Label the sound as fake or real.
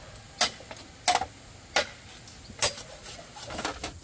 real